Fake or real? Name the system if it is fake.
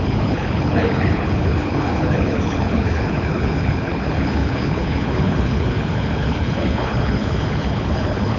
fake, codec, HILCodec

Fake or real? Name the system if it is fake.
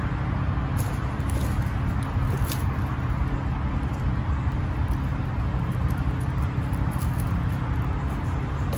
real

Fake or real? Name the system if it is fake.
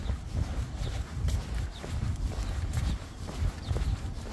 real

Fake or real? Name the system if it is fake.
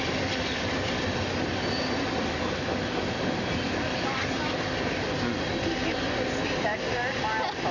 real